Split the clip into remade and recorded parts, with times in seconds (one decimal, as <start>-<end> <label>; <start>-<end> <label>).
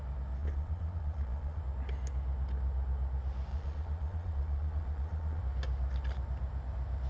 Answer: 0.0-0.4 recorded; 0.4-1.6 remade; 1.6-3.5 recorded; 3.5-5.4 remade; 5.4-7.1 recorded